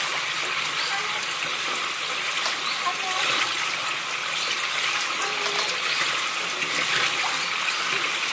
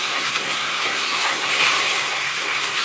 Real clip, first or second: first